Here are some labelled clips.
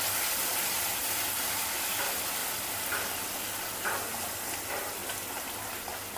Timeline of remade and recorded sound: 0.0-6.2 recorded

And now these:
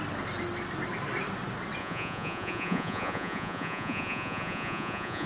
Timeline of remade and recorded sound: 0.0-1.8 recorded; 1.8-5.3 remade

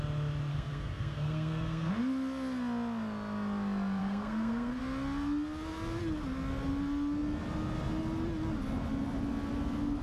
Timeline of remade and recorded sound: 0.0-0.5 recorded; 0.5-1.9 remade; 1.9-4.0 recorded; 4.0-4.8 remade; 4.8-10.0 recorded

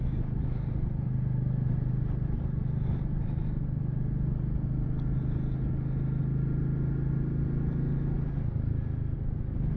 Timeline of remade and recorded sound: 0.0-9.8 recorded